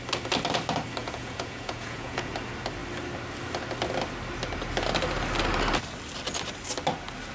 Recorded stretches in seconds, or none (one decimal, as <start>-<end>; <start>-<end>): 0.0-1.0; 2.3-7.3